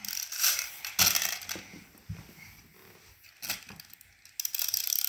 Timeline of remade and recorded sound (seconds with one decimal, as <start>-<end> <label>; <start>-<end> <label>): 0.0-0.4 recorded; 0.4-1.0 remade; 1.0-5.1 recorded